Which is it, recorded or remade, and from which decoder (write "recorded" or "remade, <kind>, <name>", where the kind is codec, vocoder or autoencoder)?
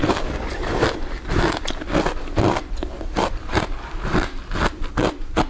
recorded